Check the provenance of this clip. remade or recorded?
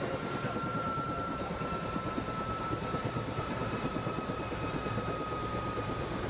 remade